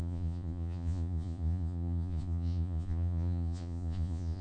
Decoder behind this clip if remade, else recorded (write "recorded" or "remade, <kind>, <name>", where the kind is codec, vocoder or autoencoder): remade, vocoder, Vocos